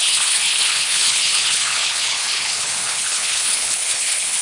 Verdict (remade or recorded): remade